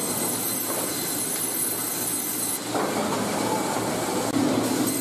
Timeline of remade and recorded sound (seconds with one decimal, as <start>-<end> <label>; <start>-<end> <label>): 0.0-5.0 recorded